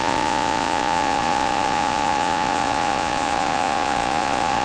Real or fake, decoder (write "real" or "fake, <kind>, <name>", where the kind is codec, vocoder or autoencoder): fake, vocoder, Vocos